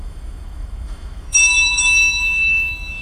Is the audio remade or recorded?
remade